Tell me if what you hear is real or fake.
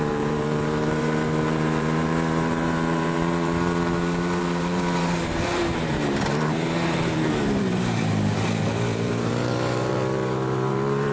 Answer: fake